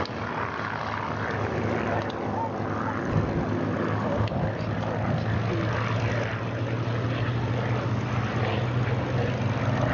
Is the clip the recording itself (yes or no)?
yes